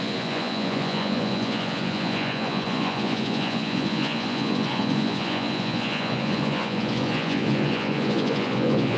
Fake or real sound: fake